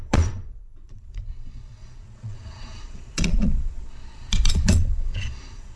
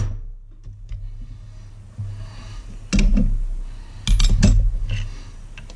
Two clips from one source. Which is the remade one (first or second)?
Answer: first